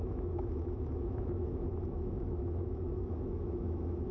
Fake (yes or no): yes